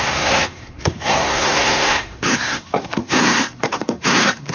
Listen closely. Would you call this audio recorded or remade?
remade